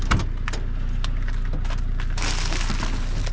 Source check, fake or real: real